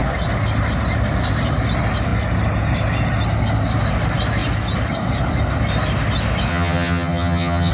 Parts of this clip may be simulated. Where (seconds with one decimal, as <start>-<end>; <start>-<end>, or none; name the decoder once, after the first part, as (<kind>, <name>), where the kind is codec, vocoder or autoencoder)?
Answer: 6.5-7.7 (vocoder, HiFi-GAN)